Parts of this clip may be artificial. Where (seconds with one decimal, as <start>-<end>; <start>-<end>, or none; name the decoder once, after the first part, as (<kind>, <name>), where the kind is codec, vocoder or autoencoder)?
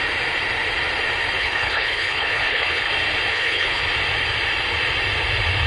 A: 1.4-2.9 (codec, HILCodec); 3.3-3.8